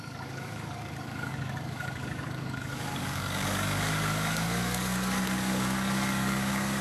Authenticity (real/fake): fake